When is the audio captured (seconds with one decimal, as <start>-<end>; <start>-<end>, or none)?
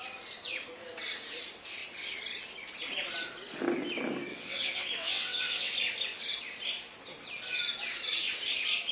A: 0.0-4.3; 5.7-8.9